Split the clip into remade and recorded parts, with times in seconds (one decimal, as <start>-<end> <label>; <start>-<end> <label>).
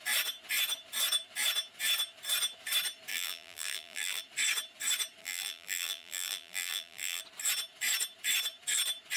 0.0-3.1 recorded; 3.1-4.2 remade; 4.2-5.2 recorded; 5.2-7.2 remade; 7.2-9.2 recorded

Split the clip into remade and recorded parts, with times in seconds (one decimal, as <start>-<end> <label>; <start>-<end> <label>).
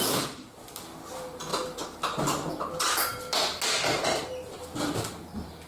0.0-5.7 recorded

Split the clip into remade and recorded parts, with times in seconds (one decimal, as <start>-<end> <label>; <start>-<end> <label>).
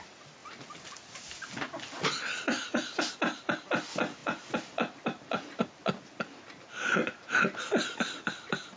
0.0-8.8 recorded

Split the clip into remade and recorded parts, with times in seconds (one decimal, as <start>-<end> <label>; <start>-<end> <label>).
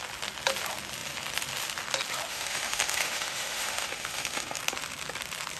0.0-2.3 recorded; 2.3-4.6 remade; 4.6-5.6 recorded